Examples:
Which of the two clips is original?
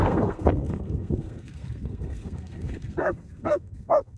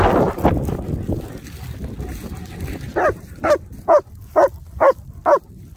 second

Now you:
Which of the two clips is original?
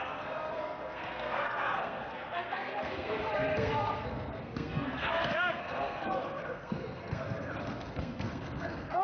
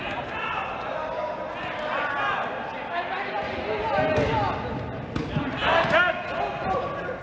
second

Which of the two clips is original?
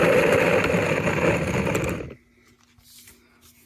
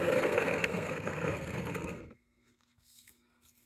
first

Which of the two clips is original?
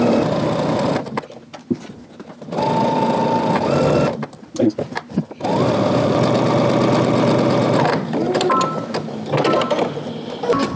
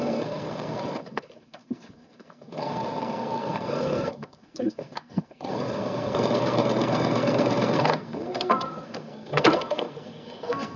first